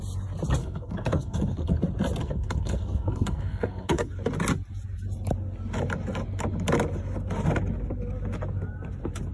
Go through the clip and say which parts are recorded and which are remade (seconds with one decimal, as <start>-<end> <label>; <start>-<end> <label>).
0.0-0.6 recorded; 0.6-1.8 remade; 1.8-2.2 recorded; 2.2-4.1 remade; 4.1-9.3 recorded